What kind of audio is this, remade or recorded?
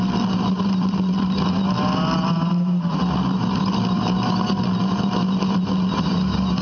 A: recorded